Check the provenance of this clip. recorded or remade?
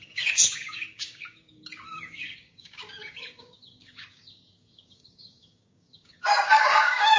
remade